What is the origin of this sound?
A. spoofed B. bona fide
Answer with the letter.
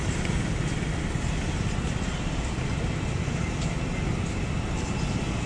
B